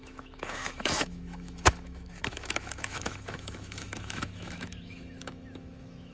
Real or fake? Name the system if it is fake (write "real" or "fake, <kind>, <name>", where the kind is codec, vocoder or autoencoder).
fake, autoencoder, DAC-VAE